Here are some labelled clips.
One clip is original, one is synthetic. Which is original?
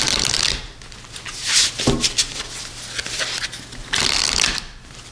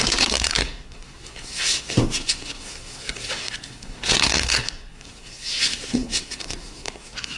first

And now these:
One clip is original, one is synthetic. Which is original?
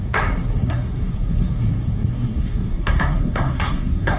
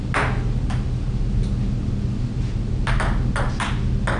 second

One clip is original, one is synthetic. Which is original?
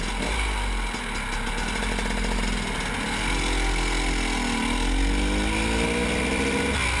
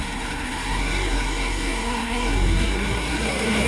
first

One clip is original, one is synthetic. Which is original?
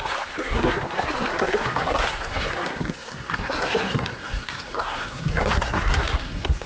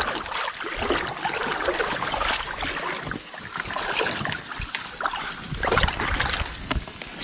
second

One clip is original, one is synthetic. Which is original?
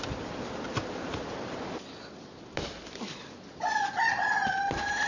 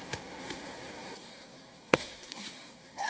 first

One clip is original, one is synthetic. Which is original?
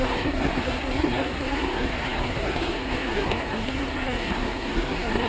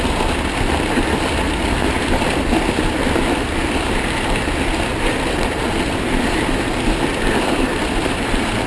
second